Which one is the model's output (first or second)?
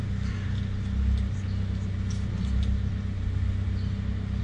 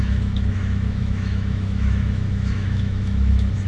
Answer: second